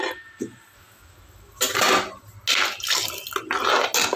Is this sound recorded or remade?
recorded